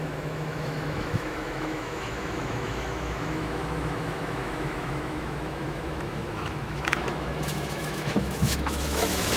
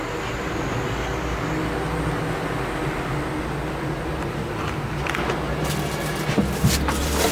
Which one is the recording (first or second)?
second